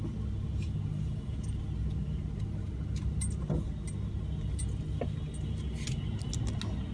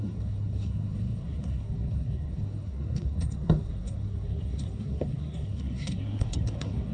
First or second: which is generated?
second